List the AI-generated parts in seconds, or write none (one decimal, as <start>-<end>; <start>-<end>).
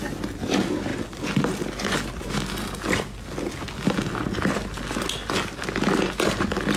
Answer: none